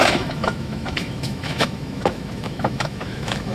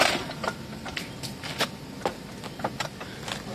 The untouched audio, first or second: second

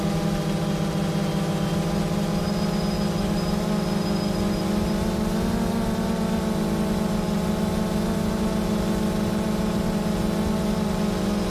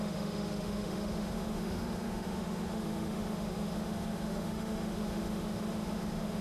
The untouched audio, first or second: first